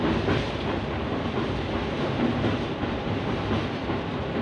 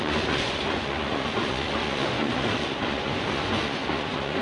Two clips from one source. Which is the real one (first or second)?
first